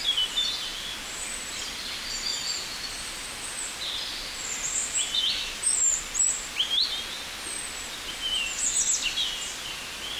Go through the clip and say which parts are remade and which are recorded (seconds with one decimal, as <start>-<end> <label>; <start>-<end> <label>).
0.0-10.2 recorded